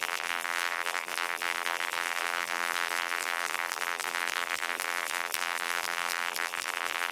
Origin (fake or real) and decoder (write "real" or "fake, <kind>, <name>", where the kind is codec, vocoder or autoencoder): fake, vocoder, BigVGAN v2